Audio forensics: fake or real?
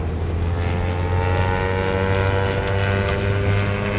real